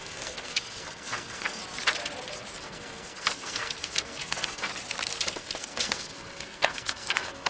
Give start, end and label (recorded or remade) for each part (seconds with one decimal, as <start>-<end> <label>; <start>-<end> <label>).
0.0-1.6 remade; 1.6-2.6 recorded; 2.6-4.7 remade; 4.7-5.3 recorded; 5.3-7.5 remade